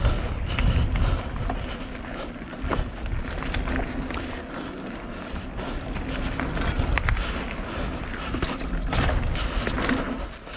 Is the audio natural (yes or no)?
yes